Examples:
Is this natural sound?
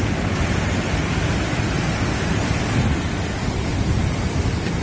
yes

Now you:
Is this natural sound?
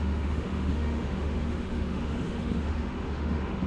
no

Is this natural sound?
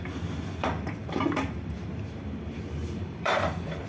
no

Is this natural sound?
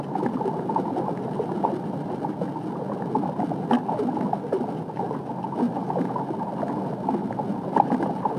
yes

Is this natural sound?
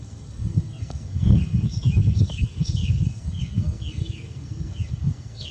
no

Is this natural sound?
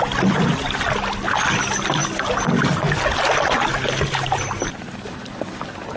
yes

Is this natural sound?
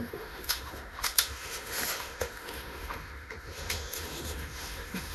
no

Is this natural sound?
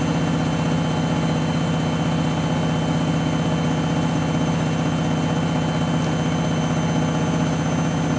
yes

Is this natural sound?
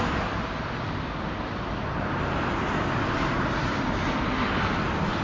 yes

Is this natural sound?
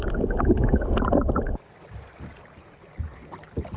yes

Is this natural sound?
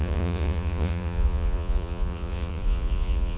no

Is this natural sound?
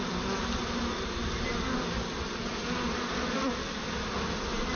yes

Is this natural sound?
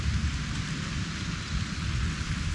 yes